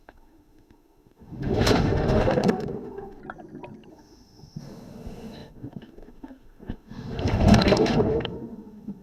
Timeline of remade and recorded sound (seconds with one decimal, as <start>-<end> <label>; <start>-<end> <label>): 0.0-3.2 remade; 3.2-3.9 recorded; 3.9-9.0 remade